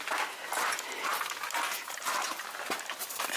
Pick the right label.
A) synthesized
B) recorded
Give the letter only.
B